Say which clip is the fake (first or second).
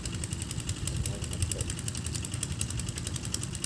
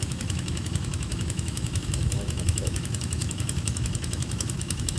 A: second